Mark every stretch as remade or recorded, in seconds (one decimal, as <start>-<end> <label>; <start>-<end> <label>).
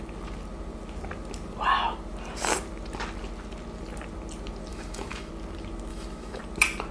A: 0.0-4.7 recorded; 4.7-5.3 remade; 5.3-5.9 recorded; 5.9-6.4 remade; 6.4-6.9 recorded